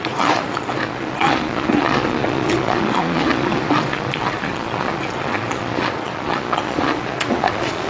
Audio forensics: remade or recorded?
remade